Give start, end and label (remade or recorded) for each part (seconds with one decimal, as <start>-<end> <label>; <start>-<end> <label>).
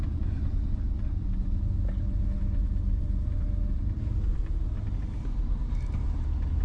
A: 0.0-6.6 recorded